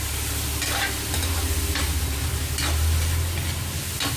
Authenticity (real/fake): real